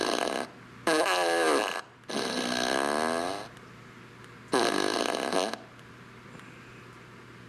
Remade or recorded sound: recorded